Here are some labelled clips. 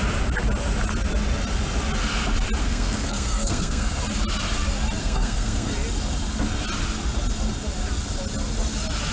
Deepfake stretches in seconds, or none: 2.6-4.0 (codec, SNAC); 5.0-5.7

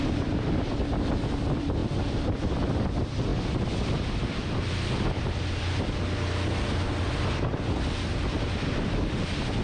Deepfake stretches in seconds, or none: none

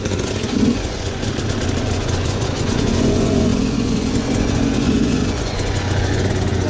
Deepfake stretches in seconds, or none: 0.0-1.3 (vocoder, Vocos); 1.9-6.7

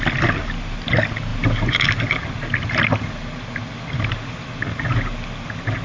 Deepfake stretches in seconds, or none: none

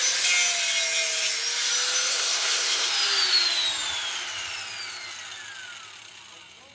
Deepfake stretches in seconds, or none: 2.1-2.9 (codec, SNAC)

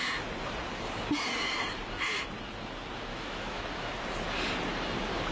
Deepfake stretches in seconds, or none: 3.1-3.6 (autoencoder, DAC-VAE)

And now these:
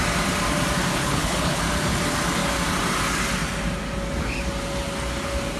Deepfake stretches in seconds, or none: 0.9-1.6 (codec, HILCodec)